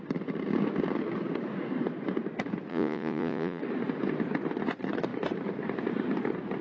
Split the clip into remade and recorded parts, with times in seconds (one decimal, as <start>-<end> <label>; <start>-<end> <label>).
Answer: 0.0-2.7 recorded; 2.7-3.6 remade; 3.6-6.6 recorded